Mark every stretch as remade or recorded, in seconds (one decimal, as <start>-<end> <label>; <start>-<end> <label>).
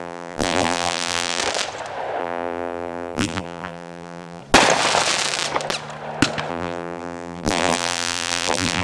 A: 0.0-1.4 remade; 1.4-2.2 recorded; 2.2-4.4 remade; 4.4-6.5 recorded; 6.5-8.8 remade